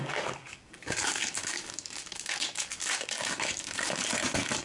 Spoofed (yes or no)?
yes